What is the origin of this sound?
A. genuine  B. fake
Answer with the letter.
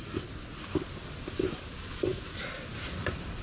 A